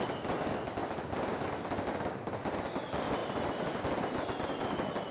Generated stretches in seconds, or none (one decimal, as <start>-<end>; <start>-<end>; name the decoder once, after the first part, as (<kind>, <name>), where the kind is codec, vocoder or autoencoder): none